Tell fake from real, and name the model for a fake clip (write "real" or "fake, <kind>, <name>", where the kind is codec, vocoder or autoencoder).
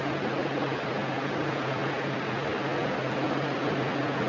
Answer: real